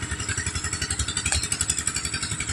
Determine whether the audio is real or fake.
real